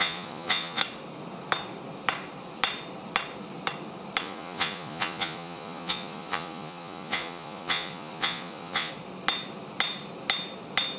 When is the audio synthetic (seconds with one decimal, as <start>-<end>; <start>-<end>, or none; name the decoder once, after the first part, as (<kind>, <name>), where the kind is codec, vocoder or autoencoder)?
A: 0.0-0.8 (vocoder, Vocos); 4.2-8.9